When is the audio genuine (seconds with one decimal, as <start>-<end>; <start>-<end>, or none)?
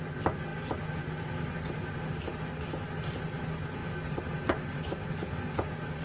0.0-2.3; 3.3-6.0